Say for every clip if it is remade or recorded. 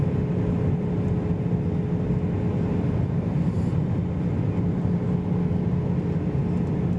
recorded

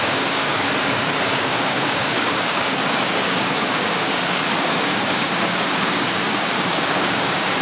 remade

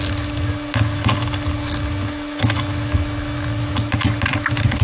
recorded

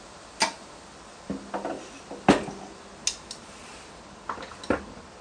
recorded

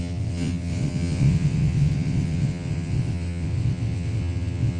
remade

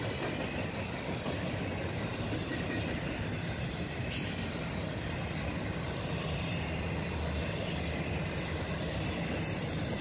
recorded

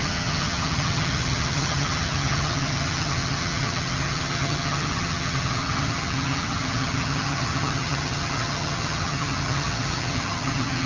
remade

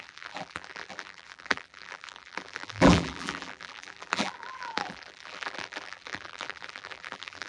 remade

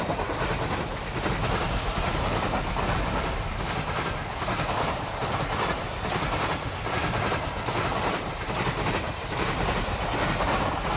recorded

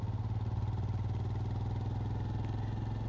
recorded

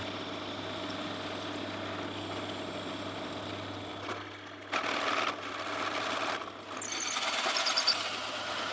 recorded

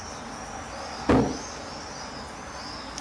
recorded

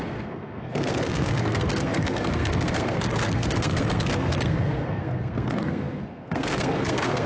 remade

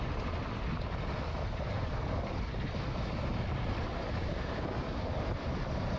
recorded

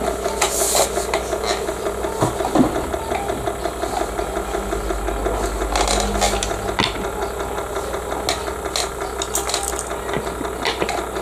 recorded